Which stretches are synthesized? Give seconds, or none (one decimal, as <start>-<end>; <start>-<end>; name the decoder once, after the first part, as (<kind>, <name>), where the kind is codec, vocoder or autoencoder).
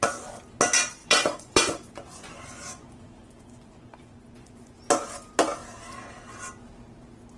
1.0-4.8 (vocoder, Vocos)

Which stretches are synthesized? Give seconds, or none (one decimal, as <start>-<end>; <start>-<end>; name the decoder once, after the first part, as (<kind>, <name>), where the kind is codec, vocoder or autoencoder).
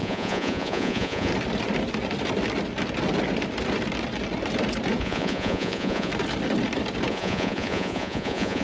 0.0-1.3 (vocoder, Vocos); 5.0-6.1; 7.1-8.6